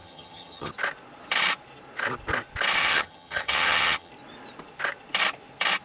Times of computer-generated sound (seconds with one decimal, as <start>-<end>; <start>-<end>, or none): 0.0-0.7; 2.8-4.1